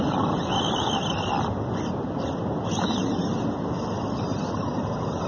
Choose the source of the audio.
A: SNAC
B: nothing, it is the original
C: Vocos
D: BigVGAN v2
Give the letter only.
B